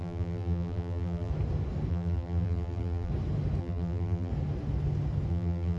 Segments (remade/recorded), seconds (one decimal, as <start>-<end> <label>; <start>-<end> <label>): 0.0-1.3 remade; 1.3-1.9 recorded; 1.9-3.1 remade; 3.1-3.6 recorded; 3.6-4.3 remade; 4.3-5.3 recorded; 5.3-5.8 remade